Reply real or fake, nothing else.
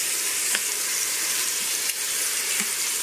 fake